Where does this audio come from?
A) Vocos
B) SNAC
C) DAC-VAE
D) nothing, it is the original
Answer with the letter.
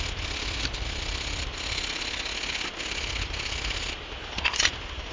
D